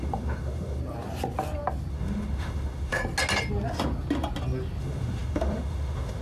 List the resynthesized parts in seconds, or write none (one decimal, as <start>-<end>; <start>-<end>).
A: 0.0-0.8; 1.9-3.0; 4.8-6.2

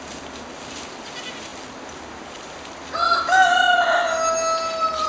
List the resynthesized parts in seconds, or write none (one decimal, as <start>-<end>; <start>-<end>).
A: none

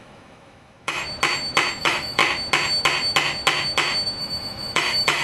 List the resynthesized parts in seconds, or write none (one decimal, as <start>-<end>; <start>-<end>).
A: 0.0-1.0; 1.8-2.2; 4.2-5.2

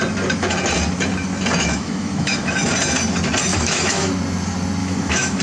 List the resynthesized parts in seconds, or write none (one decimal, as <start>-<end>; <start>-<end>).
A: 1.6-2.7; 3.5-4.1; 4.8-5.4